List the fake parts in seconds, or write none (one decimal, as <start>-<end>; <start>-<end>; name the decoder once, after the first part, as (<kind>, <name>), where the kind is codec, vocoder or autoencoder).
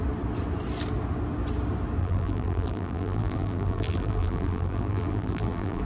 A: 2.0-5.8 (vocoder, BigVGAN v2)